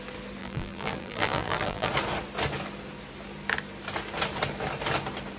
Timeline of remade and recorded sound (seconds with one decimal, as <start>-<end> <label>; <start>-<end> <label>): 0.0-0.4 recorded; 0.4-1.9 remade; 1.9-5.4 recorded